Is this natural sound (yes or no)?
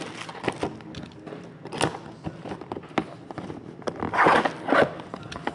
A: yes